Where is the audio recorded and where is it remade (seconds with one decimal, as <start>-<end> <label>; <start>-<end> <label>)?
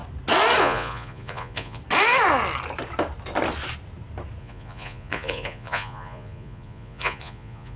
0.0-0.6 recorded; 0.6-1.8 remade; 1.8-4.4 recorded; 4.4-7.8 remade